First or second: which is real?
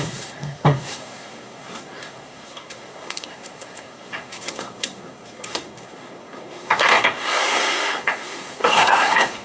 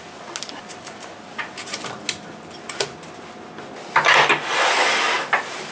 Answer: second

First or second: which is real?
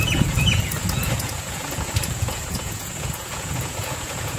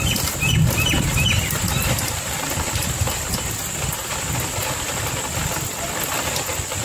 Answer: second